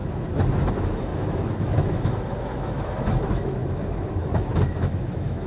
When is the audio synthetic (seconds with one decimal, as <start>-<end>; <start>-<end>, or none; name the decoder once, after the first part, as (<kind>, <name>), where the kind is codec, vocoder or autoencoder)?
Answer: 0.7-5.5 (autoencoder, DAC-VAE)